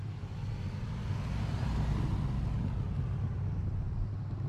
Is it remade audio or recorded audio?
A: recorded